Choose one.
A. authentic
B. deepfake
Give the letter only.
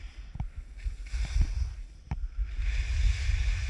A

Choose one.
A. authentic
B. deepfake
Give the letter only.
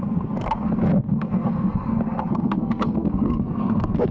B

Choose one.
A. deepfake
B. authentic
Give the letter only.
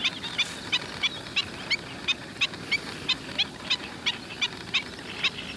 B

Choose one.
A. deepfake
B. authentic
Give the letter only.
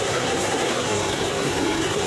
A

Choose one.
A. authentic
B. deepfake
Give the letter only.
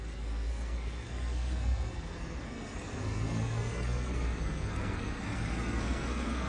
B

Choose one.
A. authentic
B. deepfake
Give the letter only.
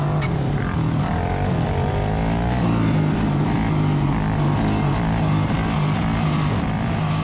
A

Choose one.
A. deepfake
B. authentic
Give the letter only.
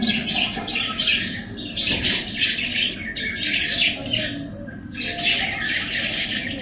B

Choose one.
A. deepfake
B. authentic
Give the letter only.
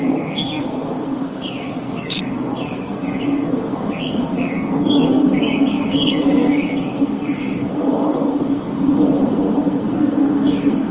A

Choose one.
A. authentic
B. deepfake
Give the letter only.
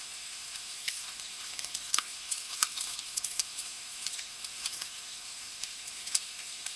B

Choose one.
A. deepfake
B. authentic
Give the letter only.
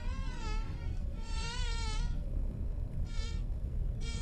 A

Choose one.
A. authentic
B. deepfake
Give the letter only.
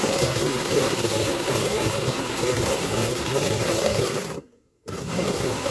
B